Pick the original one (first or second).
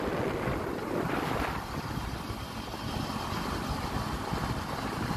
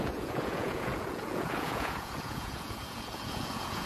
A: first